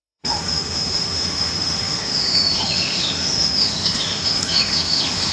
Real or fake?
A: fake